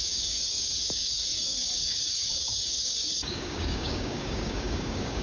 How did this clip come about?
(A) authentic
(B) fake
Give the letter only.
B